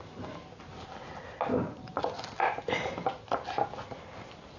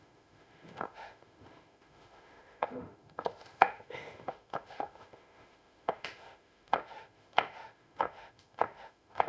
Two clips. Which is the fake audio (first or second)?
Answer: second